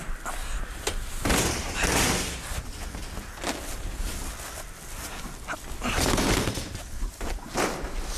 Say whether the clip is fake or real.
real